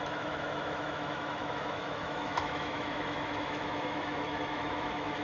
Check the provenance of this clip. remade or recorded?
remade